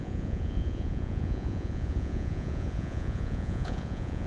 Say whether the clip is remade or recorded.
remade